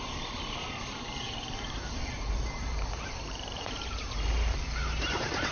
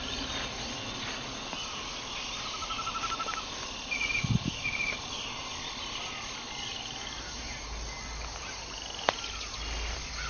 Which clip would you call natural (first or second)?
second